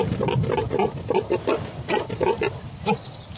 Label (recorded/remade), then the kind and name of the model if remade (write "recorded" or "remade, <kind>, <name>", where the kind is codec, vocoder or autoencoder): recorded